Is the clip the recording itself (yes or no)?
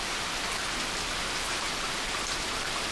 yes